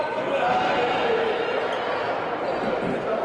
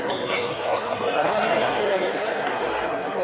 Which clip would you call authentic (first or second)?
first